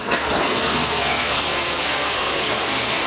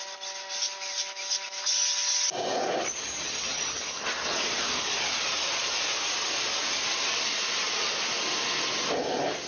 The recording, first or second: second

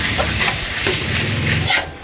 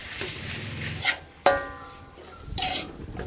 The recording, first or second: first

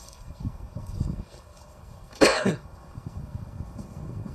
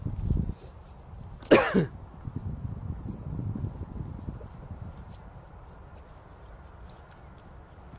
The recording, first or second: second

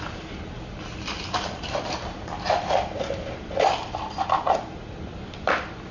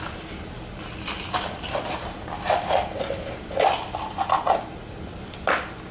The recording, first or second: second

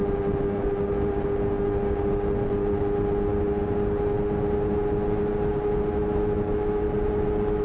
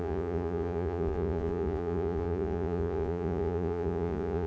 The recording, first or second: first